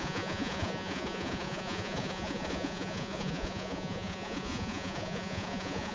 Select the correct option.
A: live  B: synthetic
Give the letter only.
B